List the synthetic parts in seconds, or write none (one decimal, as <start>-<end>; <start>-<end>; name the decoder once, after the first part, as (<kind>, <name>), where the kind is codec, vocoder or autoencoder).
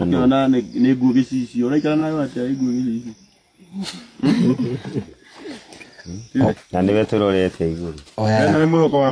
8.5-9.1 (codec, SNAC)